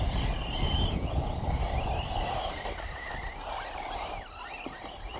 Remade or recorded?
recorded